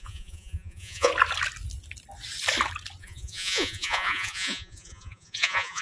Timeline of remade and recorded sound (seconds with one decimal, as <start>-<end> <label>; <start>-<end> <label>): 0.0-1.1 remade; 1.1-3.0 recorded; 3.0-5.8 remade